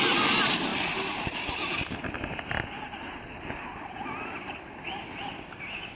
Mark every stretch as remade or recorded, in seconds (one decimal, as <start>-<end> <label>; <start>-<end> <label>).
0.0-0.7 recorded; 0.7-2.1 remade; 2.1-5.9 recorded

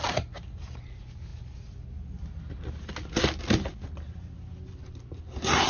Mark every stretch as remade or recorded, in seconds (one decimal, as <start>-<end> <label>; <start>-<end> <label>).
0.0-5.7 recorded

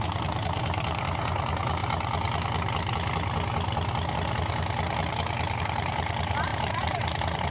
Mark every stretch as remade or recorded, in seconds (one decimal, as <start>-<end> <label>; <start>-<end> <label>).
0.0-1.8 remade; 1.8-5.6 recorded; 5.6-7.5 remade